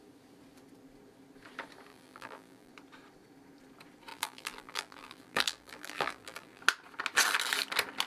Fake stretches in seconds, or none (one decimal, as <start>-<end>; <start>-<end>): 1.9-2.7; 4.1-6.6